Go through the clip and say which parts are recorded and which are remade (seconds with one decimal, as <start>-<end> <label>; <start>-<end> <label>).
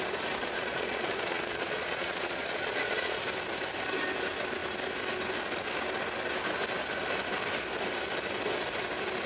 0.0-0.4 recorded; 0.4-3.2 remade; 3.2-9.3 recorded